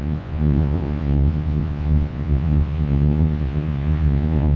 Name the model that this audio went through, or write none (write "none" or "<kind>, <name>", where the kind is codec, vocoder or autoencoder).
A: vocoder, Vocos